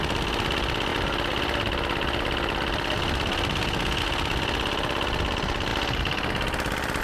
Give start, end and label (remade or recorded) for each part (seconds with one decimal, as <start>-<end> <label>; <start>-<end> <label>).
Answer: 0.0-7.0 recorded